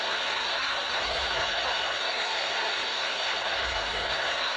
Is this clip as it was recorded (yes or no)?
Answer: no